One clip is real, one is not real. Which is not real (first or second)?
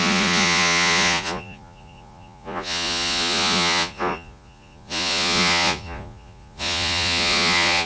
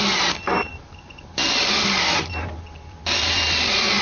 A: first